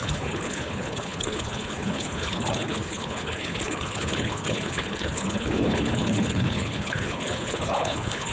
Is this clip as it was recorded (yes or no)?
no